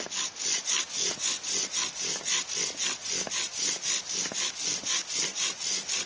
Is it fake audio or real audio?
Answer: real